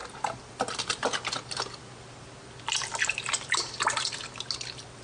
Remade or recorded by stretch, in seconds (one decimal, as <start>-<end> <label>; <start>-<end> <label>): 0.0-5.0 recorded